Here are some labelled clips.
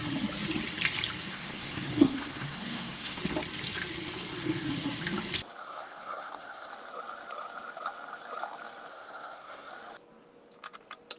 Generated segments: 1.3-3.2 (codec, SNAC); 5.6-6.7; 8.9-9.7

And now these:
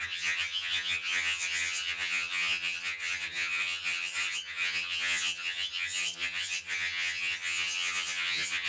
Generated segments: 0.0-8.7 (vocoder, HiFi-GAN)

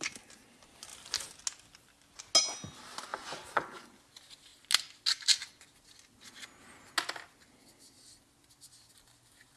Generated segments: 3.1-4.0 (vocoder, Vocos)

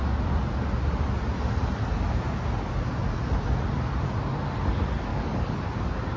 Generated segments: 5.1-5.6 (codec, DAC)